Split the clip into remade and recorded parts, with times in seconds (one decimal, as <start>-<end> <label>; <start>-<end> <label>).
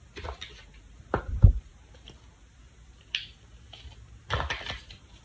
0.0-5.2 recorded